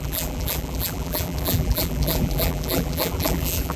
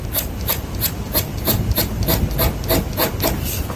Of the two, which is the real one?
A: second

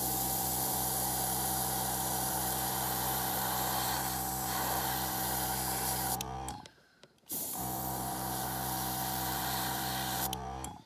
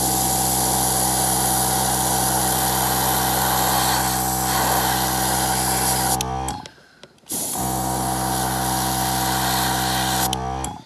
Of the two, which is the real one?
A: second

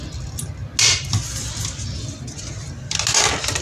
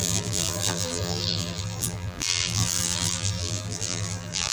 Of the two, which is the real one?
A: first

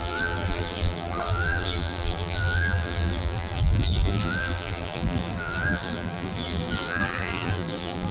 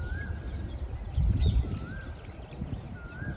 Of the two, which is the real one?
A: second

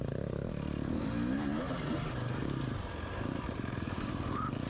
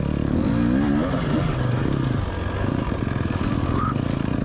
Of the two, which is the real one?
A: second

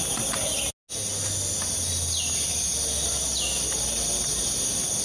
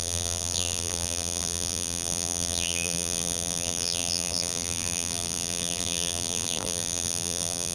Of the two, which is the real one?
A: first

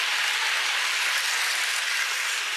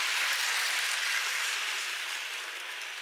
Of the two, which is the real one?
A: first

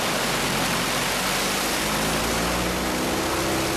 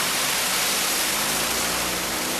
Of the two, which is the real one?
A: first